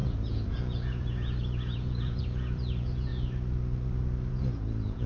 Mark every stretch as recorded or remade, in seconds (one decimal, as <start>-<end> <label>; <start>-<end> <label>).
0.0-3.1 remade; 3.1-4.3 recorded; 4.3-5.1 remade